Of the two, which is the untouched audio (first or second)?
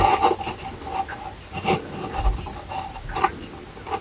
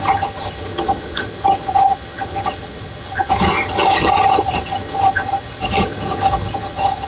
first